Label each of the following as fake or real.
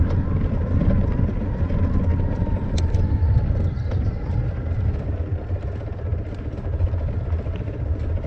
real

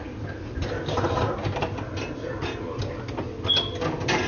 real